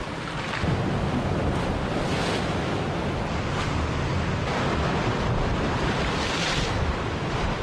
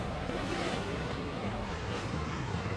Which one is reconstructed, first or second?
second